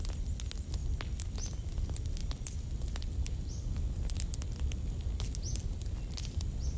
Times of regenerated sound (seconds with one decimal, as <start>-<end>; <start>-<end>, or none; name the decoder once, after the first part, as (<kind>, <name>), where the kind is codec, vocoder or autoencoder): none

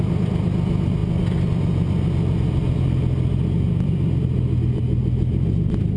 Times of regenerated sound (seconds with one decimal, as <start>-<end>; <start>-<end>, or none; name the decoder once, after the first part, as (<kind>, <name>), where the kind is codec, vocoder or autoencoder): none

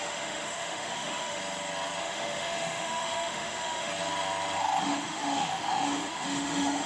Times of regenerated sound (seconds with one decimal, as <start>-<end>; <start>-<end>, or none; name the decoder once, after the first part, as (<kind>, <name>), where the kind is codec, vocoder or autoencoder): 0.0-1.4 (autoencoder, DAC-VAE); 2.0-3.9; 4.8-6.9